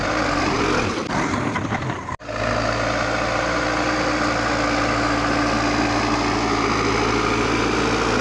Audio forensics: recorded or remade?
recorded